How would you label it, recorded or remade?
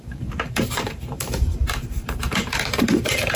remade